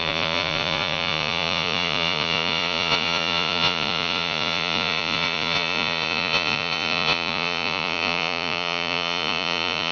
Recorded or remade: remade